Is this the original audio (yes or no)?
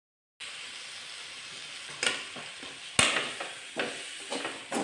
yes